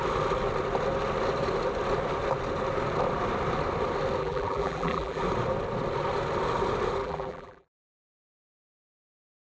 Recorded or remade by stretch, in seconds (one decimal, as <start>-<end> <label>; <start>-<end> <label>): 0.0-4.2 recorded; 4.2-5.2 remade; 5.2-7.0 recorded; 7.0-7.7 remade; 7.7-9.6 recorded